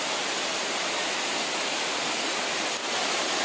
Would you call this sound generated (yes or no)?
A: no